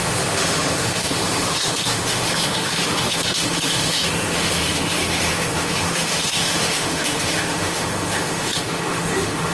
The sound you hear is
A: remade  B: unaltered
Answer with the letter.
A